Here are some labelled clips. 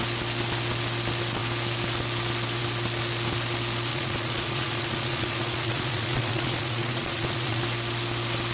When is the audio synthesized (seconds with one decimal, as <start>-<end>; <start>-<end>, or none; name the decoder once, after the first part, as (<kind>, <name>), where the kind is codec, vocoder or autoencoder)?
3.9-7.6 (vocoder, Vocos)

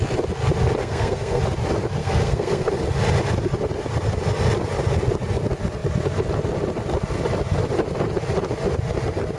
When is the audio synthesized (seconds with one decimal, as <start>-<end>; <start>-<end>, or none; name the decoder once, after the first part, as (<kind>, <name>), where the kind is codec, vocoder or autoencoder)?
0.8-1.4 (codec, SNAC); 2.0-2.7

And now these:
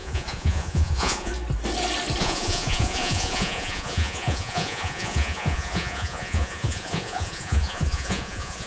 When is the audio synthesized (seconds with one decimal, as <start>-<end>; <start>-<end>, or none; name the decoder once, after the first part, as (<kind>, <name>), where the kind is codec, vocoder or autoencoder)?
0.0-1.3 (vocoder, Vocos); 2.2-8.7